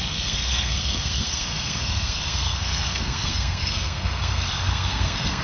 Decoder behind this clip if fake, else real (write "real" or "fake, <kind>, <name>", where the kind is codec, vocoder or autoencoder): fake, codec, SNAC